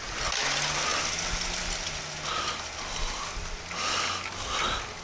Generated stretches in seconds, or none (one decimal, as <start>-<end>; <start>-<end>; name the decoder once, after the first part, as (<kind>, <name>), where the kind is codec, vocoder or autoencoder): none